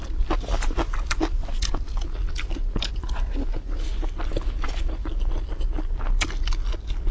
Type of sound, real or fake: real